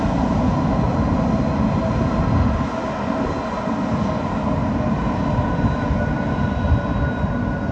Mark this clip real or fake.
real